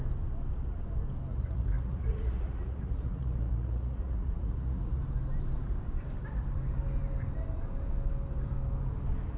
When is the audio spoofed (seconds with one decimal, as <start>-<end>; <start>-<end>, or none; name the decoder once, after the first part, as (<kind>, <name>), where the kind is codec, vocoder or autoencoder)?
1.3-5.0 (vocoder, Vocos)